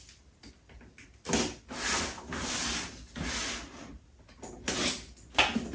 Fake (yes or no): no